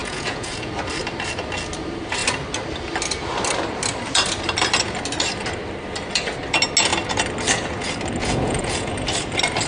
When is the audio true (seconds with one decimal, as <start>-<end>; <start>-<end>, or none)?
0.7-8.2; 8.9-9.7